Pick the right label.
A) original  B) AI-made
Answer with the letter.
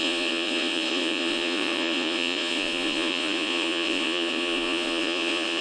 B